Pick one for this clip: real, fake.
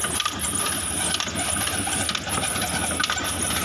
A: real